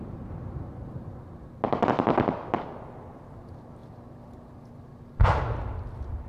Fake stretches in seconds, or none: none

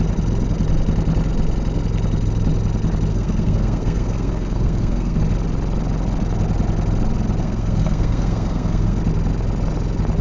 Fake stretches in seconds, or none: 3.1-5.2 (codec, SNAC); 7.4-9.0

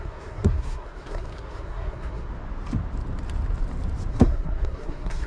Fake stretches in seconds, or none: 0.0-2.3 (codec, SNAC); 4.1-5.3

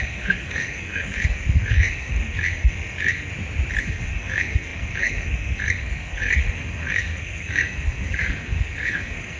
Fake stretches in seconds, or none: 0.0-3.3 (codec, SNAC); 3.8-9.4

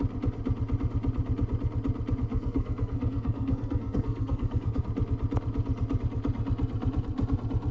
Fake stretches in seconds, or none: 2.3-4.8 (codec, SNAC)